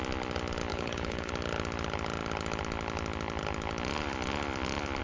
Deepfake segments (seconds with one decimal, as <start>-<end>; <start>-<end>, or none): 0.7-1.3